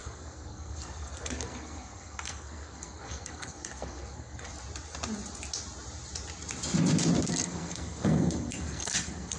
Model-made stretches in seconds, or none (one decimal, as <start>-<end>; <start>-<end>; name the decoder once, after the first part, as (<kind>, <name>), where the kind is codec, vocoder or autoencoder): 0.0-4.5 (codec, SNAC); 7.3-9.4